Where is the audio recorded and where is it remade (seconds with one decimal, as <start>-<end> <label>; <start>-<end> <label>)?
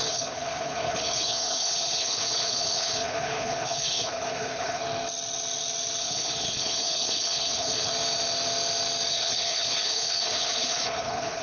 0.0-4.8 remade; 4.8-6.0 recorded; 6.0-7.9 remade; 7.9-9.1 recorded; 9.1-11.4 remade